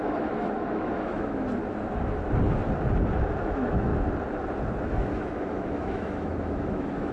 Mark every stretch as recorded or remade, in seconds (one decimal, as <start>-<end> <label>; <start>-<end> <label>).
0.0-1.6 remade; 1.6-3.4 recorded; 3.4-3.9 remade; 3.9-4.8 recorded; 4.8-7.1 remade